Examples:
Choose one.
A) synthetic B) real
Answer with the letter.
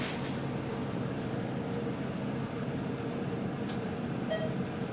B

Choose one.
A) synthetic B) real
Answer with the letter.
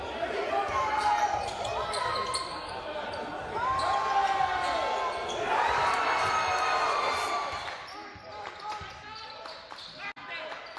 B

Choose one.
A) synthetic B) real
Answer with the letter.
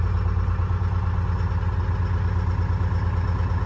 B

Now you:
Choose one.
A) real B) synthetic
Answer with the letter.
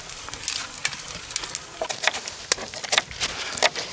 A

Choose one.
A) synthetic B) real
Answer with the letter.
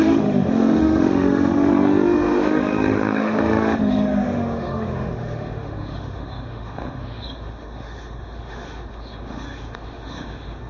A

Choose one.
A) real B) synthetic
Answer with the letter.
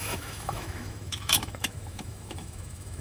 B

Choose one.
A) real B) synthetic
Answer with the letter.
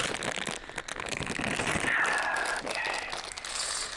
A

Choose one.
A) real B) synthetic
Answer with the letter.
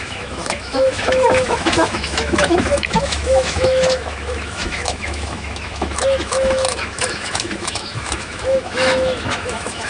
B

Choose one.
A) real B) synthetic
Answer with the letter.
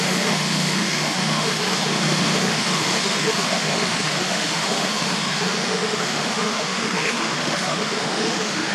B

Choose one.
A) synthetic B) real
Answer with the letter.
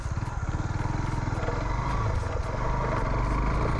B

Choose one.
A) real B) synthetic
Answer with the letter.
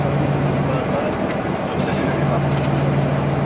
A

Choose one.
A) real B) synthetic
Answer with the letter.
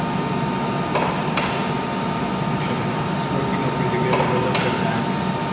A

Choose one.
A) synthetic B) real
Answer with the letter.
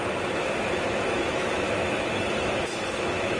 A